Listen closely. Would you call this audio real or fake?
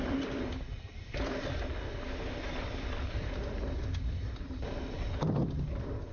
real